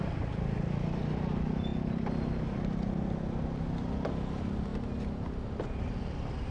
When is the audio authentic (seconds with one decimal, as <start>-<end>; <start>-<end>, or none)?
0.0-6.5

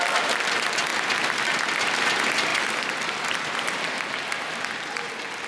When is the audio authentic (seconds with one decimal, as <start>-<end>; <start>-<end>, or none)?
0.0-5.5

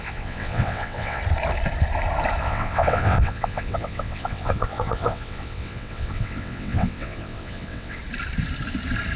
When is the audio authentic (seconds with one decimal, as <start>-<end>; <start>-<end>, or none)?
1.2-2.4; 8.0-9.2

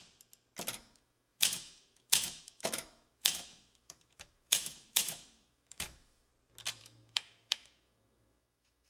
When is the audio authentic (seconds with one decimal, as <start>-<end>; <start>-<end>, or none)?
0.0-0.8; 6.3-6.8

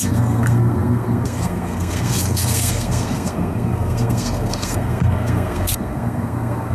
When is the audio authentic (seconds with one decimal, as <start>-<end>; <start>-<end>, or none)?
none

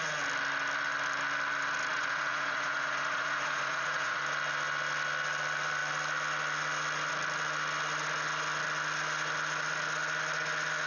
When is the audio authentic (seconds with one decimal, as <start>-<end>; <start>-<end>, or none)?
0.0-1.9; 4.2-10.9

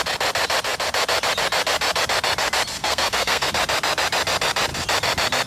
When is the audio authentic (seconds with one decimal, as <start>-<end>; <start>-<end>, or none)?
0.0-2.8; 3.5-5.5